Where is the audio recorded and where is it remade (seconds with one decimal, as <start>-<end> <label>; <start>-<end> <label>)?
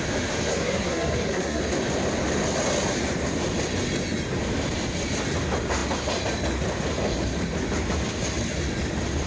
0.0-0.5 recorded; 0.5-1.6 remade; 1.6-9.3 recorded